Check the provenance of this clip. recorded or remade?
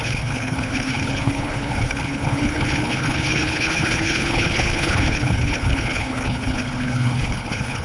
remade